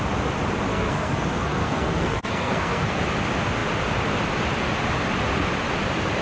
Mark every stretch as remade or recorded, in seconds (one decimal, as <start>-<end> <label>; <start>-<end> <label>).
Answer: 0.0-0.7 recorded; 0.7-3.0 remade; 3.0-6.2 recorded